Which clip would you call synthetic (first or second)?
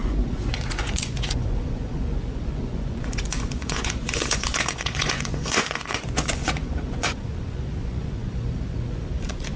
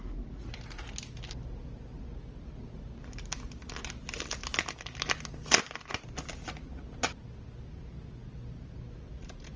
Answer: first